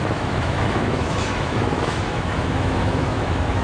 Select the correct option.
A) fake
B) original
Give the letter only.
A